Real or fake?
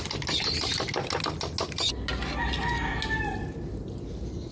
real